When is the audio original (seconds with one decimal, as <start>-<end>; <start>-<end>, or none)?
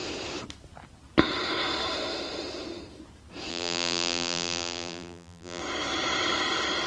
0.0-3.5; 5.6-6.9